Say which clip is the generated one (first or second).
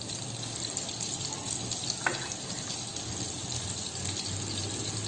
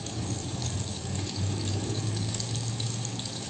second